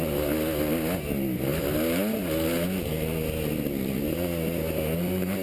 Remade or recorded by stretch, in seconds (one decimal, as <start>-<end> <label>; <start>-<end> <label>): 0.0-5.4 recorded